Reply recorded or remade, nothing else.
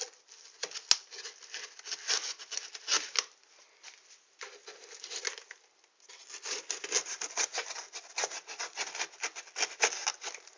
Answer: recorded